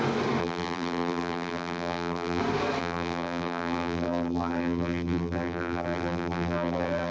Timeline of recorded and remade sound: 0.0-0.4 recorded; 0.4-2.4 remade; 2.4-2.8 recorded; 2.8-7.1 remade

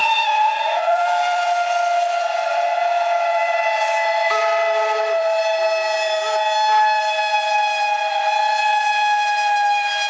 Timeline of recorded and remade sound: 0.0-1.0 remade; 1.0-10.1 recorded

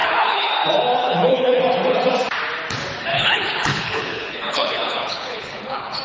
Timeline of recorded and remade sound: 0.0-0.5 remade; 0.5-1.0 recorded; 1.0-1.6 remade; 1.6-3.1 recorded; 3.1-6.0 remade